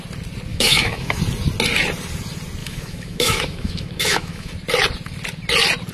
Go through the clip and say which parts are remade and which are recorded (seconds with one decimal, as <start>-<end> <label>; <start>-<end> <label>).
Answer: 0.0-0.5 recorded; 0.5-1.2 remade; 1.2-2.6 recorded; 2.6-4.5 remade; 4.5-5.9 recorded